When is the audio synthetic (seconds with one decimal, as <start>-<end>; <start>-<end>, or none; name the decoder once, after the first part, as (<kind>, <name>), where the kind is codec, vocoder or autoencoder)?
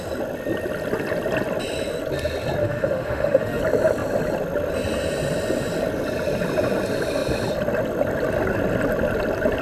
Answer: 2.6-3.6 (autoencoder, DAC-VAE)